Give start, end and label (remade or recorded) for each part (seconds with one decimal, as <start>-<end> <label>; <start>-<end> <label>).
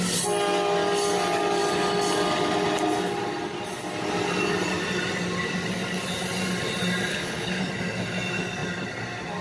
0.0-7.1 recorded; 7.1-7.6 remade; 7.6-9.4 recorded